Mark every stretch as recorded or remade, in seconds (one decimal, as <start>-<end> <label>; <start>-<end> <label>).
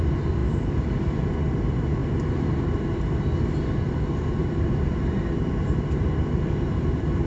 0.0-0.4 recorded; 0.4-1.0 remade; 1.0-2.0 recorded; 2.0-3.0 remade; 3.0-4.4 recorded; 4.4-5.0 remade; 5.0-7.3 recorded